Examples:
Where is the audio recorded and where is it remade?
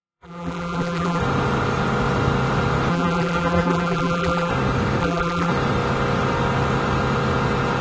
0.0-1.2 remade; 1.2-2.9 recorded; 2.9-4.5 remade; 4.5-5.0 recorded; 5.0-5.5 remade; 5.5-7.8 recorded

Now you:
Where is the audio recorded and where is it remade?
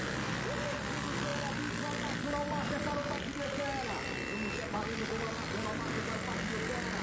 0.0-7.0 recorded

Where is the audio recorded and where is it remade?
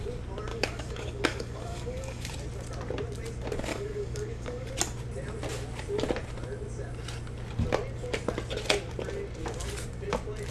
0.0-0.5 recorded; 0.5-2.3 remade; 2.3-3.7 recorded; 3.7-4.7 remade; 4.7-10.5 recorded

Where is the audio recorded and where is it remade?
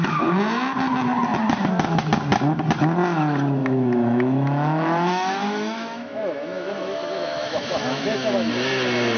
0.0-3.6 recorded; 3.6-8.5 remade; 8.5-9.2 recorded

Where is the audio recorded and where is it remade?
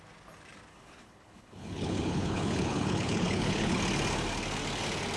0.0-0.7 recorded; 0.7-3.8 remade; 3.8-5.2 recorded